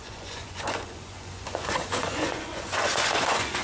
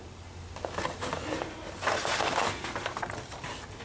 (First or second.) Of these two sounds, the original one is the second